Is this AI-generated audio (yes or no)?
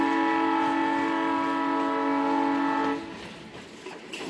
no